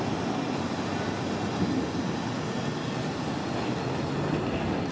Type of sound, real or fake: real